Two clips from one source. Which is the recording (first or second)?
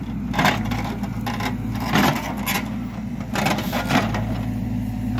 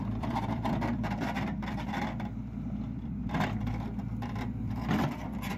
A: first